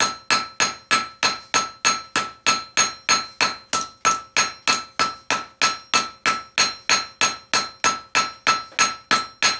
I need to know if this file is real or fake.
real